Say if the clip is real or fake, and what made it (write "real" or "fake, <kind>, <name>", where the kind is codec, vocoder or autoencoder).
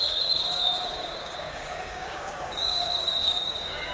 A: fake, codec, DAC